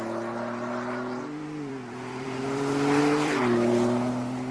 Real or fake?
fake